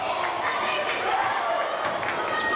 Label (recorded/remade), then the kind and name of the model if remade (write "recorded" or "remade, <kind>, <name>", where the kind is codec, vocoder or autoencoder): recorded